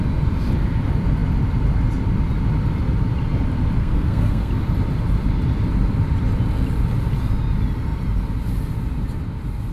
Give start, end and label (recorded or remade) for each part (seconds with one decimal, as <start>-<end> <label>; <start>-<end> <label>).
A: 0.0-3.8 recorded; 3.8-4.5 remade; 4.5-9.7 recorded

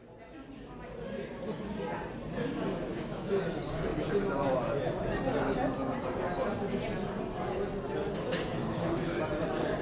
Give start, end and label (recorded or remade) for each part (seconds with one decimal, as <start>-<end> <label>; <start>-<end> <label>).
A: 0.0-2.9 recorded; 2.9-3.4 remade; 3.4-8.6 recorded; 8.6-9.2 remade; 9.2-9.8 recorded